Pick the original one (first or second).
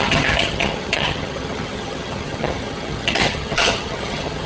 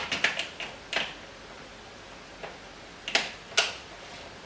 second